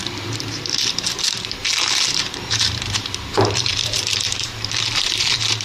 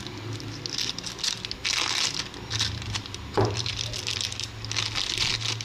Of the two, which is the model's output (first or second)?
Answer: first